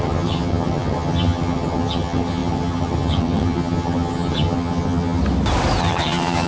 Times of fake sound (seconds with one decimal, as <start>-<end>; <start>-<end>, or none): 0.0-5.2; 5.8-6.5